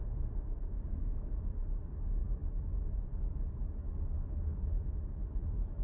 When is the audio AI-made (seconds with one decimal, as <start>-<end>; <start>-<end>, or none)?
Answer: 0.0-1.4